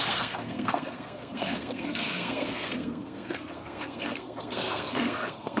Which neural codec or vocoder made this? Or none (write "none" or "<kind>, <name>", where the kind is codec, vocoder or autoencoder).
codec, SNAC